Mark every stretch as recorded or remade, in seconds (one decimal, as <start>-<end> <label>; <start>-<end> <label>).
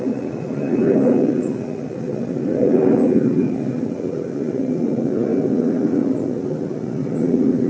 0.0-7.7 remade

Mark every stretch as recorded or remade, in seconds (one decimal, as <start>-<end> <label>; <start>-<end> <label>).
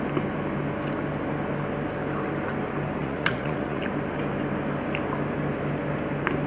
0.0-3.0 recorded; 3.0-3.8 remade; 3.8-6.5 recorded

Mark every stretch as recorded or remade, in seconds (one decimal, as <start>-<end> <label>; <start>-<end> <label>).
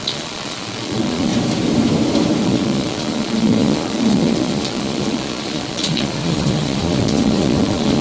0.0-1.3 remade; 1.3-2.4 recorded; 2.4-8.0 remade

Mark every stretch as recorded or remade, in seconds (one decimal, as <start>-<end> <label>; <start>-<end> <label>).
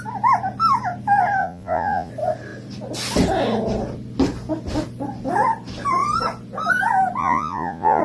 0.0-1.4 recorded; 1.4-2.1 remade; 2.1-7.2 recorded; 7.2-8.0 remade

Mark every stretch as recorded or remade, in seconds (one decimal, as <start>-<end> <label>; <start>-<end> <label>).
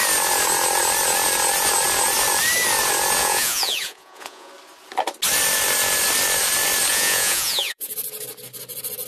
0.0-3.2 recorded; 3.2-4.5 remade; 4.5-6.9 recorded; 6.9-7.9 remade; 7.9-9.1 recorded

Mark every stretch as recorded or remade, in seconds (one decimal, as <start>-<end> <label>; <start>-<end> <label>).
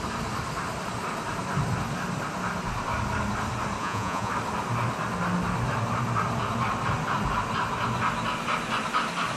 0.0-3.8 recorded; 3.8-4.3 remade; 4.3-9.4 recorded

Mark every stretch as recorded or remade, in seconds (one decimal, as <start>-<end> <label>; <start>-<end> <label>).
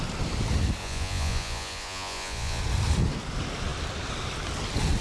0.0-0.8 recorded; 0.8-2.6 remade; 2.6-5.0 recorded